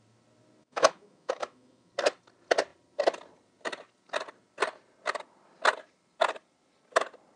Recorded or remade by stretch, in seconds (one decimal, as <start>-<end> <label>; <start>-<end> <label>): 0.0-0.6 recorded; 0.6-1.9 remade; 1.9-7.4 recorded